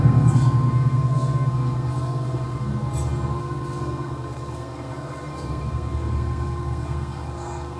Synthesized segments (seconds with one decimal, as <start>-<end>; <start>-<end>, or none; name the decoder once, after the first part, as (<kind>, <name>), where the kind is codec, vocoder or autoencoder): 0.0-2.7 (codec, SNAC); 3.4-7.8